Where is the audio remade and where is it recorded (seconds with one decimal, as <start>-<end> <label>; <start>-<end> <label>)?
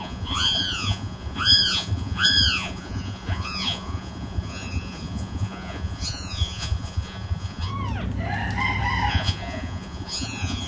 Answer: 0.0-7.7 remade; 7.7-9.1 recorded; 9.1-10.7 remade